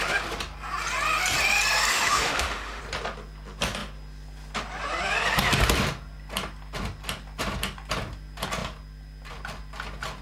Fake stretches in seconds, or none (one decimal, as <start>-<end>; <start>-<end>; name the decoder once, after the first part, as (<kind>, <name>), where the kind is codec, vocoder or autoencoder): 1.9-2.8 (autoencoder, DAC-VAE)